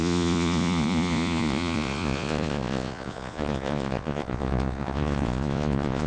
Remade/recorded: remade